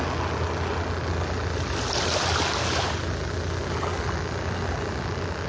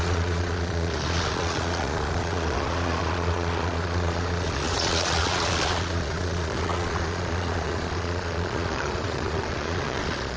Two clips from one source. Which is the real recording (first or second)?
first